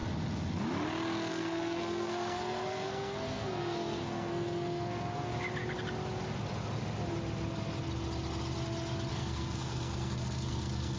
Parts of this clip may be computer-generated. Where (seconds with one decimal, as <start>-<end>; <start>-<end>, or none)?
1.3-5.3; 9.1-11.0